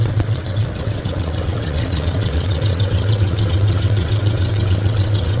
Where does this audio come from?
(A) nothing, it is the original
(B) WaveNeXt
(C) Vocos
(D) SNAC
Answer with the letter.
B